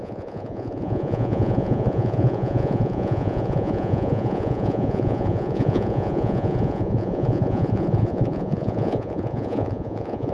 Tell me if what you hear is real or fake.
fake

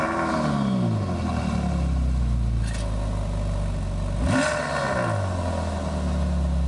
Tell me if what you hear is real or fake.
real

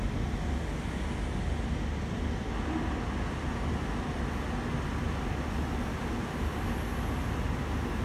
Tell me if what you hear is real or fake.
real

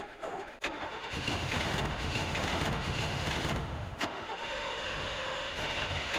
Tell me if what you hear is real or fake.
fake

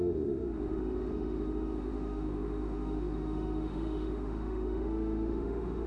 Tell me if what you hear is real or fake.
fake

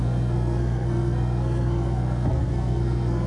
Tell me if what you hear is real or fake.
fake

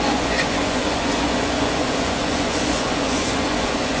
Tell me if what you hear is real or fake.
fake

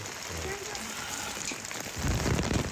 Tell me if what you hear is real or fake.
real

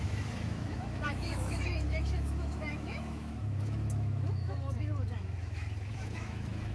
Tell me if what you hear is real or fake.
fake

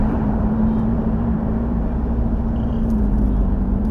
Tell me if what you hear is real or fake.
fake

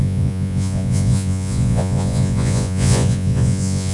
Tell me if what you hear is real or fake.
fake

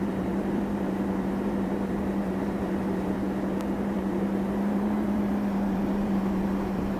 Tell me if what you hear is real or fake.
fake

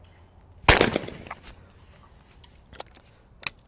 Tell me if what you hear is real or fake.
real